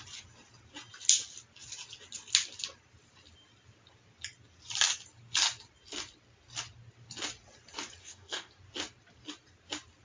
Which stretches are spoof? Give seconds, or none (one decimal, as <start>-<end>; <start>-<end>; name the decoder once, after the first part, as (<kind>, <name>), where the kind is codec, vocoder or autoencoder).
8.0-8.5 (codec, DAC)